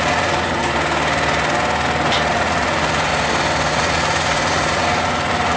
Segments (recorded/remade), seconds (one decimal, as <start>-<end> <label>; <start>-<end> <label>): 0.0-0.6 remade; 0.6-2.3 recorded; 2.3-3.1 remade; 3.1-3.7 recorded; 3.7-5.6 remade